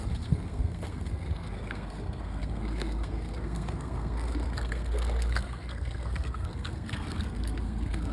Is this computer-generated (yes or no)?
yes